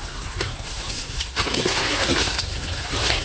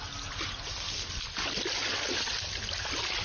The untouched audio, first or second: second